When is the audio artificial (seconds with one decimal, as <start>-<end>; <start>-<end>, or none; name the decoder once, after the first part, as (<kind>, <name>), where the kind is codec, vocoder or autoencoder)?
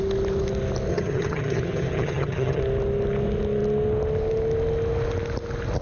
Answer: 0.9-2.6 (vocoder, HiFi-GAN)